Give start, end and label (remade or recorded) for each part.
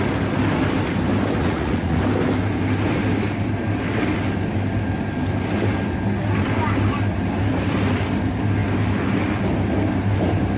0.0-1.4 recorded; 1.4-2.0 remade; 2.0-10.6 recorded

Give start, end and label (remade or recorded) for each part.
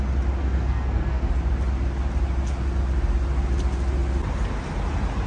0.0-0.4 recorded; 0.4-1.3 remade; 1.3-5.3 recorded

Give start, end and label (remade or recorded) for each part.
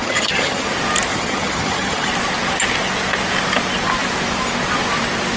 0.0-0.7 remade; 0.7-1.1 recorded; 1.1-2.1 remade; 2.1-5.4 recorded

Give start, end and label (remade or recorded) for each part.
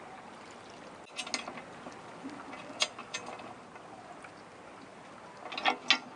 0.0-6.2 recorded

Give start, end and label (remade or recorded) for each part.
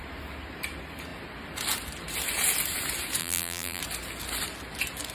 0.0-3.2 recorded; 3.2-3.8 remade; 3.8-5.1 recorded